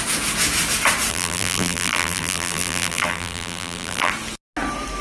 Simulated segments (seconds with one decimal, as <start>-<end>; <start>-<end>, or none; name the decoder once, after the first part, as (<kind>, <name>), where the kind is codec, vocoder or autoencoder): 1.1-4.1 (vocoder, BigVGAN v2)